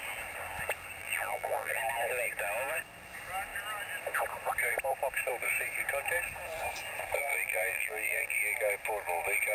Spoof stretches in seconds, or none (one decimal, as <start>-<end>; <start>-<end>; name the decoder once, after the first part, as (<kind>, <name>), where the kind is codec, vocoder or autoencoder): 1.0-1.8 (vocoder, BigVGAN v2); 7.3-8.4